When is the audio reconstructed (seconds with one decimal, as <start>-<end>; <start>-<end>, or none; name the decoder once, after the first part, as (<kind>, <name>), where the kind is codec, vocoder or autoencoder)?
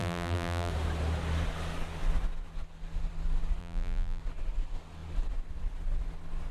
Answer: 0.0-0.7 (vocoder, BigVGAN v2); 3.6-4.2